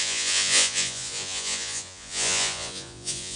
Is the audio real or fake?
fake